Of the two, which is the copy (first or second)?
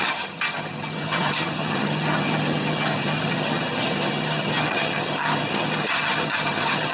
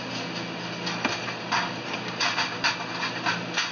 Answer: first